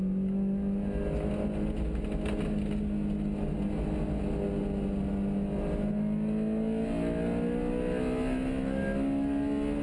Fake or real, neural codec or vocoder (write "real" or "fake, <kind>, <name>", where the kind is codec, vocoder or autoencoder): real